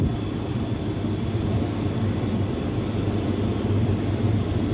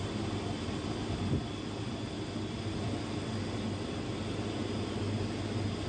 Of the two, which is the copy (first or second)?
first